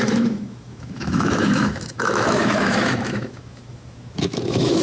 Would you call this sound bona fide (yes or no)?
no